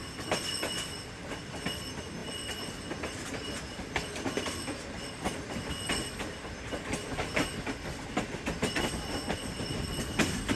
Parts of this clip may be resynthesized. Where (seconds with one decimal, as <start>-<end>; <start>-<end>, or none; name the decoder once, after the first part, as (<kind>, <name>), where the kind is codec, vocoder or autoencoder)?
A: none